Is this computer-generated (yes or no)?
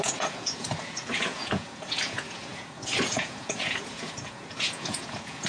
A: yes